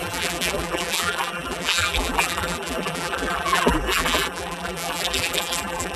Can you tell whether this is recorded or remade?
remade